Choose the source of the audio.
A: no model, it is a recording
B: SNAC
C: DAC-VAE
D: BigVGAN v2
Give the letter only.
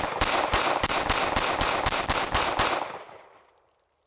A